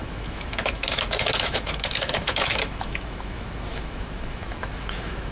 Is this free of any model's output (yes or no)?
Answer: no